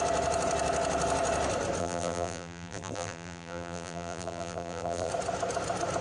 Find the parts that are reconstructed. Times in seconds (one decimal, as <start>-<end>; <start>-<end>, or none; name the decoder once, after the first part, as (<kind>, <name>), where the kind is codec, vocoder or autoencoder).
1.8-5.1 (vocoder, BigVGAN v2)